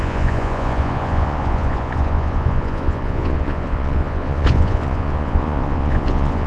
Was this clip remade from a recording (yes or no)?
yes